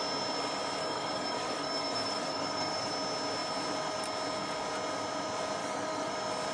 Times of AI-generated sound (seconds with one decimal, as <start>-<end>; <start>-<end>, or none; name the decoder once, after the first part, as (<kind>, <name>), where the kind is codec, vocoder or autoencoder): 0.8-2.9 (codec, DAC); 5.6-6.1